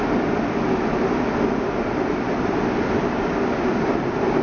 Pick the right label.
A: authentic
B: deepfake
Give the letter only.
A